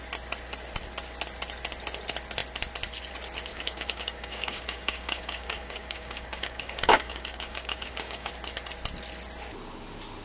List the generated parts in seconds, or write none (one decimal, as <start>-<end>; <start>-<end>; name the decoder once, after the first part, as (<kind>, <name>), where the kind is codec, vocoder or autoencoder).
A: 3.5-8.3 (codec, DAC)